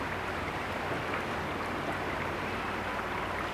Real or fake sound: real